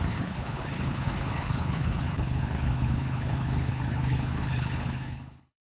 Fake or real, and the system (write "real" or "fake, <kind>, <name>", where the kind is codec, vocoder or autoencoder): fake, codec, HILCodec